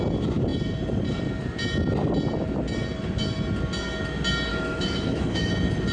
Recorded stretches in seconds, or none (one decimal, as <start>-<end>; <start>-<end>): 0.0-4.5; 5.5-5.9